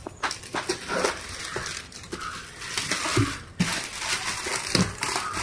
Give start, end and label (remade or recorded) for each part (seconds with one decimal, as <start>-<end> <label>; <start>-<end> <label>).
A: 0.0-0.7 remade; 0.7-5.4 recorded